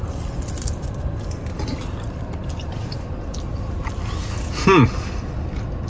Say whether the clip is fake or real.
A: real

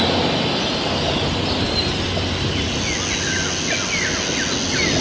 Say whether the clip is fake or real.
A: real